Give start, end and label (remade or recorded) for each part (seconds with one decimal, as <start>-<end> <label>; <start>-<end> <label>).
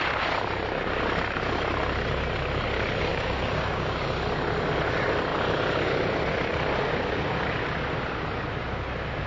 0.0-3.1 recorded; 3.1-4.1 remade; 4.1-9.3 recorded